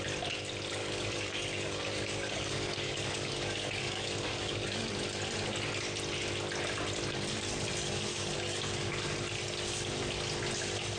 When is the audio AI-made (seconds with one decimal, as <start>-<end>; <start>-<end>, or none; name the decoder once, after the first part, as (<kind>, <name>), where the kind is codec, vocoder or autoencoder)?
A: 0.8-4.9 (codec, DAC); 8.1-8.9